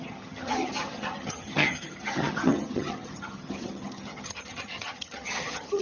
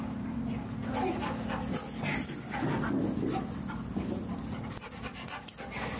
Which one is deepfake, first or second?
first